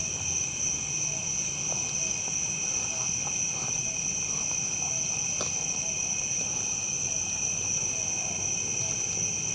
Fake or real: real